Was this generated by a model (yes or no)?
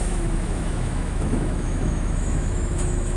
yes